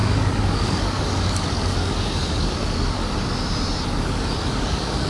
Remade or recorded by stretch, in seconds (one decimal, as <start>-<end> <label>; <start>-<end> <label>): 0.0-3.0 remade; 3.0-4.0 recorded; 4.0-5.1 remade